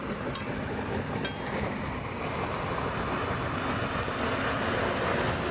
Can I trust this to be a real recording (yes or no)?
yes